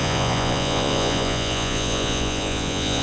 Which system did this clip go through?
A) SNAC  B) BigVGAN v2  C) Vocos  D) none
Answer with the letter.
C